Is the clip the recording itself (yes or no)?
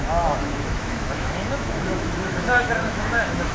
no